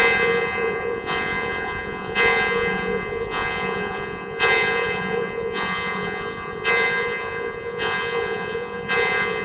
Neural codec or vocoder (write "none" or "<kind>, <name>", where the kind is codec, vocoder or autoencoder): vocoder, Vocos